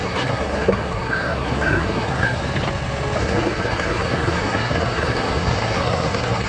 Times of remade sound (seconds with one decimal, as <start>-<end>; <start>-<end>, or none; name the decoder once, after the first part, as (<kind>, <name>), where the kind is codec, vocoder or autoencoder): 0.0-2.4 (codec, SNAC); 3.2-6.5